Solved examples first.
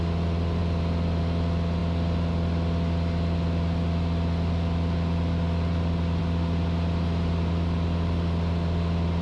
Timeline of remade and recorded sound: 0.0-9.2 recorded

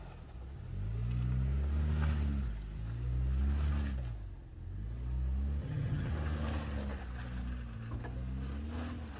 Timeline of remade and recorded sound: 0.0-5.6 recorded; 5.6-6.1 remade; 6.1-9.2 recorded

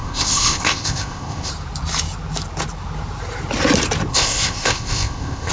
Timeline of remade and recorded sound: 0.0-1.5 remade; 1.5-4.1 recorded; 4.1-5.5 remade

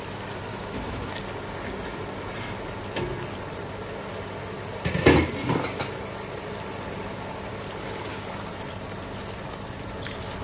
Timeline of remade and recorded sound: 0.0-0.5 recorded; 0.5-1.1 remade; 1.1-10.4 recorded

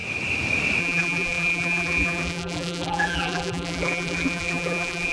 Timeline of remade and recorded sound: 0.0-0.8 recorded; 0.8-5.1 remade

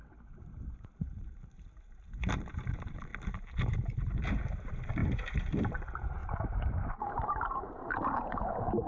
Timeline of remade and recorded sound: 0.0-3.1 remade; 3.1-4.3 recorded; 4.3-8.9 remade

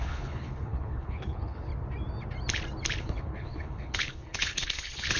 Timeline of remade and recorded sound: 0.0-1.7 remade; 1.7-3.0 recorded; 3.0-5.2 remade

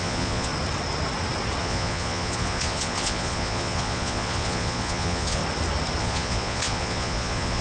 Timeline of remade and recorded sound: 0.0-0.5 remade; 0.5-1.6 recorded; 1.6-5.4 remade; 5.4-6.0 recorded; 6.0-7.6 remade